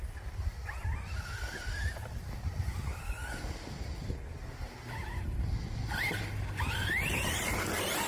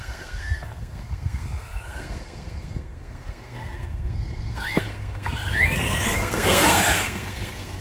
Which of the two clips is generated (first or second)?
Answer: second